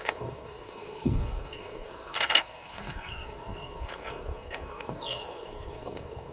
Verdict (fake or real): fake